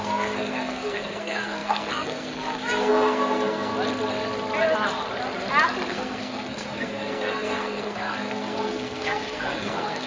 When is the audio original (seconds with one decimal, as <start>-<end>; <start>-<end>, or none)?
3.7-5.9

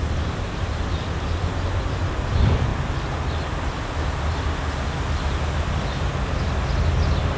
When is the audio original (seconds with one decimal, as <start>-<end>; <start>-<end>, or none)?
0.0-7.4

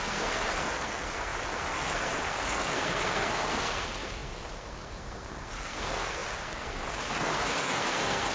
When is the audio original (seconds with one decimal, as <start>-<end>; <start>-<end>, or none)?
none